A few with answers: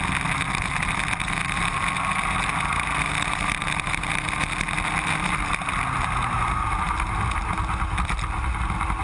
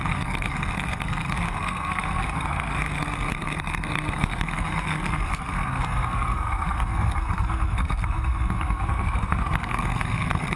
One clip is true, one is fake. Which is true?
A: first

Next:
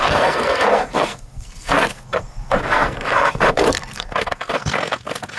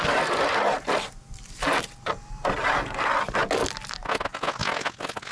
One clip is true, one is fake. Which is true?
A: second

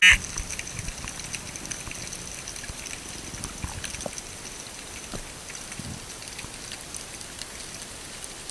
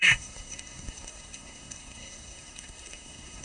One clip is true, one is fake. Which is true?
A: first